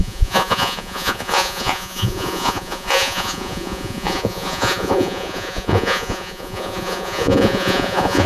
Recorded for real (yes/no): no